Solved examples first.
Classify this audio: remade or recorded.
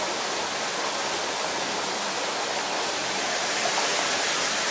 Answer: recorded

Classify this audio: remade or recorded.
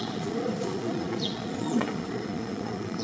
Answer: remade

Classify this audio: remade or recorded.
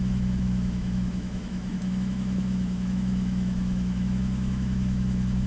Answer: remade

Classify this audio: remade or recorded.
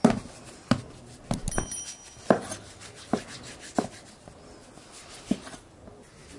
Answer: recorded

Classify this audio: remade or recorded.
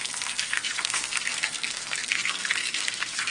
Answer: remade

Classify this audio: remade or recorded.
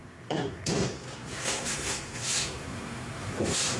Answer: remade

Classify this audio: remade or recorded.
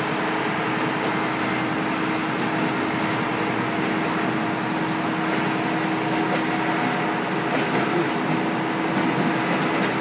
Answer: recorded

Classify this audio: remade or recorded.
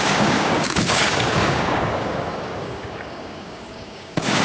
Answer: remade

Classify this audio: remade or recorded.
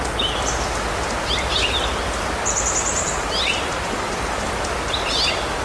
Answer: recorded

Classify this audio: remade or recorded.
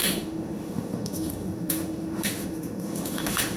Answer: remade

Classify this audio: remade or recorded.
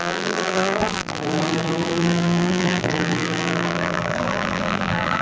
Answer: remade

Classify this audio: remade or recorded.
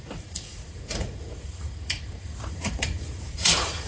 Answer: remade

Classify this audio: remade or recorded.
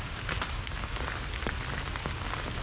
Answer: recorded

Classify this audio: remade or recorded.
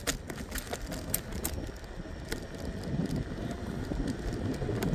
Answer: recorded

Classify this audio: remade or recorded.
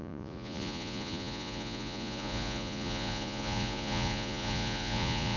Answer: remade